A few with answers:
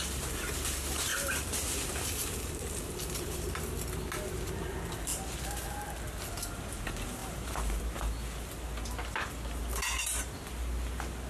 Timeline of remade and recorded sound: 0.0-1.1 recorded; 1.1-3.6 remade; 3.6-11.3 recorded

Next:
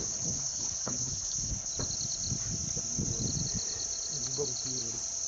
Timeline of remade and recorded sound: 0.0-1.7 remade; 1.7-5.3 recorded

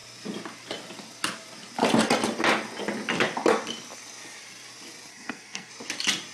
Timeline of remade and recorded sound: 0.0-5.1 recorded; 5.1-5.7 remade; 5.7-6.3 recorded

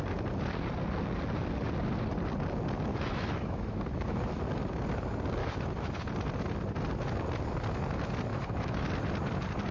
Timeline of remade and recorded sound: 0.0-2.9 recorded; 2.9-4.4 remade; 4.4-5.4 recorded; 5.4-6.1 remade; 6.1-8.3 recorded; 8.3-8.9 remade; 8.9-9.7 recorded

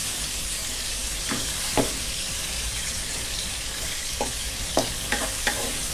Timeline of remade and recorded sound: 0.0-5.9 remade

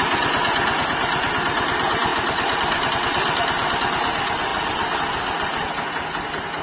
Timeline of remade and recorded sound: 0.0-2.1 recorded; 2.1-2.9 remade; 2.9-4.5 recorded; 4.5-5.0 remade; 5.0-6.6 recorded

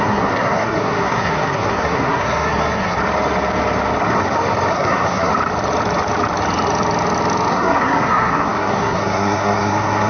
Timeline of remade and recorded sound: 0.0-3.0 remade; 3.0-4.7 recorded; 4.7-5.3 remade; 5.3-7.5 recorded; 7.5-10.1 remade

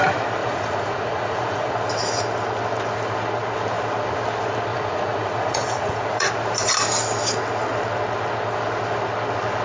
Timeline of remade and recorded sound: 0.0-0.4 recorded; 0.4-1.7 remade; 1.7-4.7 recorded; 4.7-6.3 remade; 6.3-9.6 recorded